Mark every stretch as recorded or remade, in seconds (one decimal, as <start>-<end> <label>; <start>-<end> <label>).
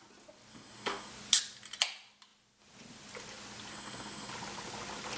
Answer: 0.0-0.5 recorded; 0.5-1.1 remade; 1.1-3.7 recorded; 3.7-4.3 remade; 4.3-5.2 recorded